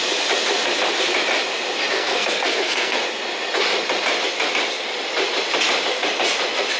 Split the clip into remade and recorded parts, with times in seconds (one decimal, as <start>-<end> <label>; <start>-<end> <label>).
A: 0.0-1.9 recorded; 1.9-3.0 remade; 3.0-6.8 recorded